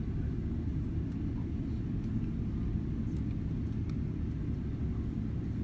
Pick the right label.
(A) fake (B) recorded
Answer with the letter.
B